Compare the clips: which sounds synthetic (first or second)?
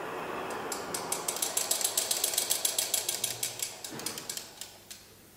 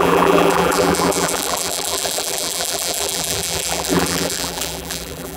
second